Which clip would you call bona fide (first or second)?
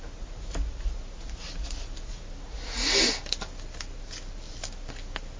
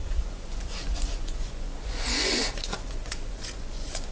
first